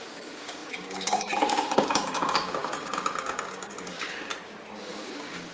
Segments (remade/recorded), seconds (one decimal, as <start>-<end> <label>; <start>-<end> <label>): 0.0-4.3 remade; 4.3-4.8 recorded; 4.8-5.5 remade